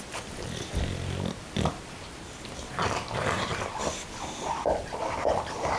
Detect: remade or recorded recorded